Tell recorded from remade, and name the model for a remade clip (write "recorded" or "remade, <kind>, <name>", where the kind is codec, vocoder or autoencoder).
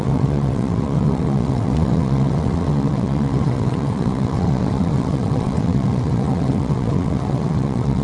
remade, vocoder, WaveNeXt